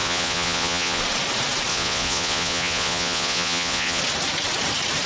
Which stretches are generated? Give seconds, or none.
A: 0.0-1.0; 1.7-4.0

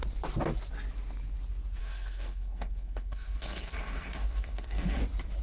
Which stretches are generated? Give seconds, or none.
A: 1.8-5.0

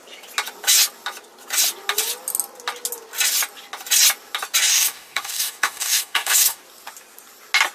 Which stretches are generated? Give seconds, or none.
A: 4.7-6.6

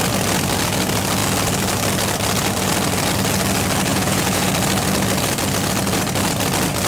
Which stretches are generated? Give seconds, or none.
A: 3.9-4.5

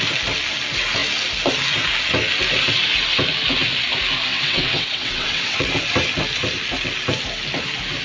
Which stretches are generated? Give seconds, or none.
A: 4.3-5.7